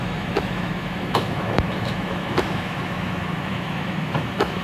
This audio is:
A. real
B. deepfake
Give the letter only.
B